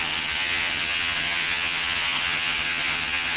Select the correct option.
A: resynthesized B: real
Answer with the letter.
A